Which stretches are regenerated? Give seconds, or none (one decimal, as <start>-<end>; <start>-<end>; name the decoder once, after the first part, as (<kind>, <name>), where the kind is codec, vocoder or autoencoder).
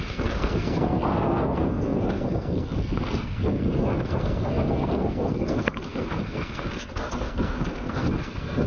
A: 0.0-8.7 (codec, SNAC)